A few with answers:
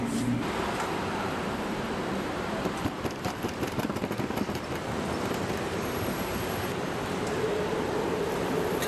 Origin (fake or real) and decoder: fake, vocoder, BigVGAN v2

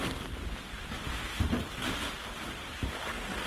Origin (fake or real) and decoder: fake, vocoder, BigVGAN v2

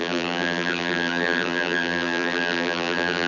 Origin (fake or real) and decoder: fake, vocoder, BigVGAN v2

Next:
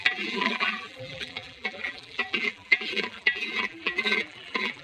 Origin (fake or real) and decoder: fake, vocoder, BigVGAN v2